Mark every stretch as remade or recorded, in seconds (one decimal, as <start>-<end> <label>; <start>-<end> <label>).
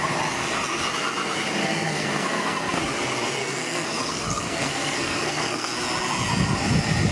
0.0-1.6 recorded; 1.6-2.8 remade; 2.8-3.4 recorded; 3.4-5.7 remade; 5.7-7.1 recorded